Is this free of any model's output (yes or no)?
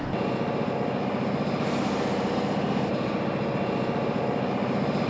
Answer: yes